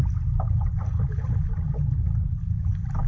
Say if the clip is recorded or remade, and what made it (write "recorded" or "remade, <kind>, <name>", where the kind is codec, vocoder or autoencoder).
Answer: recorded